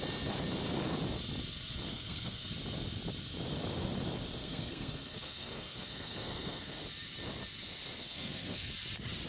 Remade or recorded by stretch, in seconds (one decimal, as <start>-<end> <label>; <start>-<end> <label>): 0.0-1.9 recorded; 1.9-2.5 remade; 2.5-4.4 recorded; 4.4-6.8 remade; 6.8-8.0 recorded; 8.0-8.7 remade; 8.7-9.3 recorded